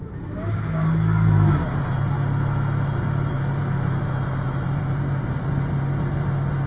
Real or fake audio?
real